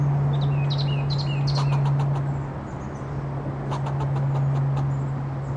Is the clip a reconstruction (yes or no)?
no